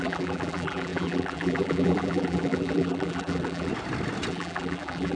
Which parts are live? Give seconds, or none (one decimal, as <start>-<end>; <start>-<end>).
3.7-4.3